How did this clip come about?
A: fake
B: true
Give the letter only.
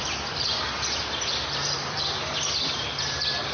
A